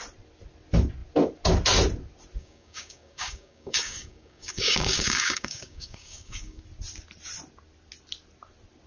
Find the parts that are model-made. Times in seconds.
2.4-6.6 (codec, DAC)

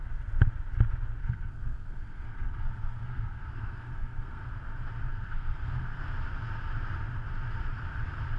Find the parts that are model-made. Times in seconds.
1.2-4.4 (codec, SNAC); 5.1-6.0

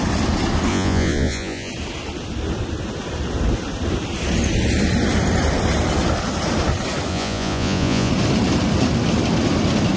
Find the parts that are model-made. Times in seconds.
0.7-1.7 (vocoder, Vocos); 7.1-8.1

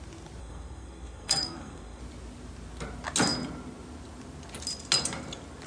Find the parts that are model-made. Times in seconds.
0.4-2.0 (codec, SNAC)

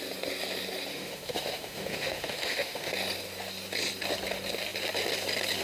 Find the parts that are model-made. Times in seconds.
0.9-2.9 (autoencoder, DAC-VAE)

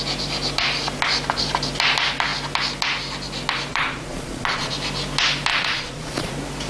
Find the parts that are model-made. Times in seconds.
3.7-4.7 (vocoder, Vocos); 5.5-6.3